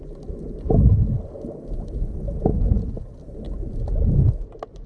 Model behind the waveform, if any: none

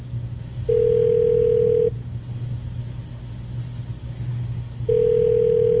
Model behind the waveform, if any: none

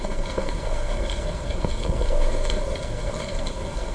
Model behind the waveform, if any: codec, SNAC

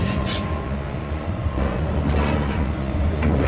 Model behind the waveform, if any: vocoder, Vocos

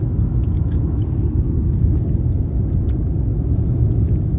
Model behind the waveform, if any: none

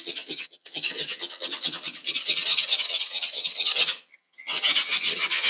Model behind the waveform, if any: vocoder, HiFi-GAN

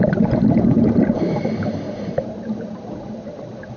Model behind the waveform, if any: vocoder, BigVGAN v2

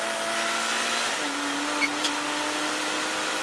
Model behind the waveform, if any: none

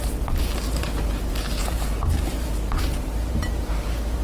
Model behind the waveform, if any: vocoder, BigVGAN v2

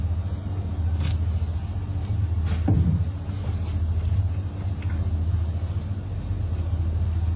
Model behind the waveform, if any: none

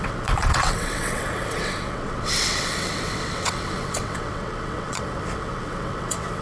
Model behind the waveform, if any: vocoder, WaveNeXt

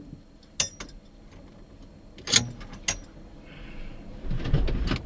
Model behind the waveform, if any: none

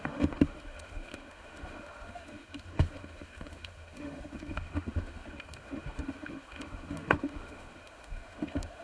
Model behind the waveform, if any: autoencoder, DAC-VAE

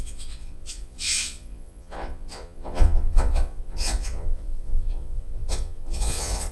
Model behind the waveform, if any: vocoder, Vocos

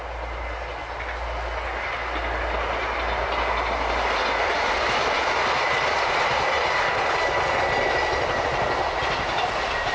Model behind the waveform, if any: none